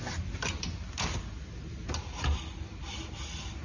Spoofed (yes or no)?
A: no